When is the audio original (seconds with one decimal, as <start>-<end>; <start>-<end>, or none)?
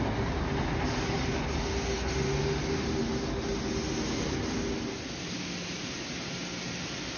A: 0.0-7.2